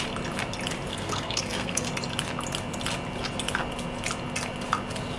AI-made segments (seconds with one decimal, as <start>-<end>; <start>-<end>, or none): 0.9-1.9